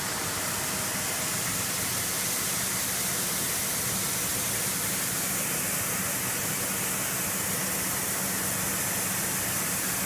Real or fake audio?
real